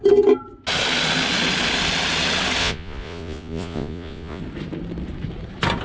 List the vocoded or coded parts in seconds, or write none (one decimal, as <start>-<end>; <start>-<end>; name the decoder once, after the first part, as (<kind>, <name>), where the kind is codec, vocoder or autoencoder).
2.6-4.4 (vocoder, Vocos)